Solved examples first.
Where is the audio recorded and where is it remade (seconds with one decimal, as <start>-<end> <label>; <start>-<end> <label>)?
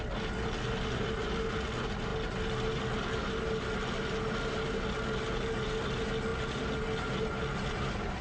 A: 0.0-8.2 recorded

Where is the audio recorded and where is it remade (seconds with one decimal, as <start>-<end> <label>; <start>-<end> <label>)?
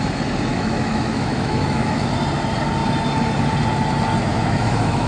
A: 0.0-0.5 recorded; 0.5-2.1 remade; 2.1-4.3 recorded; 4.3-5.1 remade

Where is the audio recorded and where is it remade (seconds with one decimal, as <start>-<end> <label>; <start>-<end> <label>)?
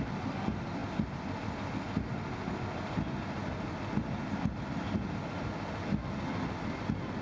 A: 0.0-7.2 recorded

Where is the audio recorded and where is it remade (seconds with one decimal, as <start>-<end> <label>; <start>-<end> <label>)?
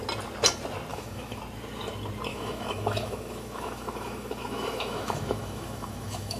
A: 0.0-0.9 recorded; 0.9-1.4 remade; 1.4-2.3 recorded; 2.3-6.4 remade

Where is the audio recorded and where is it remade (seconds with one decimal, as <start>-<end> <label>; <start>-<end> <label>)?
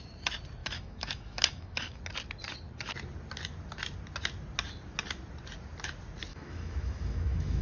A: 0.0-0.6 recorded; 0.6-2.0 remade; 2.0-6.3 recorded; 6.3-7.6 remade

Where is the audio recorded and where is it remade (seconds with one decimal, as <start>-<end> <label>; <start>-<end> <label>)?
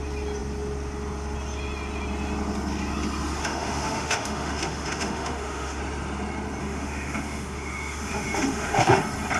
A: 0.0-3.4 recorded; 3.4-5.8 remade; 5.8-6.6 recorded; 6.6-9.0 remade; 9.0-9.4 recorded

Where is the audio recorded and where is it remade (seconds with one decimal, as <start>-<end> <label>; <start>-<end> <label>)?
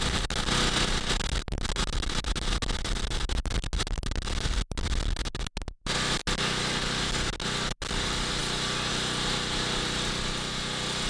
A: 0.0-11.1 recorded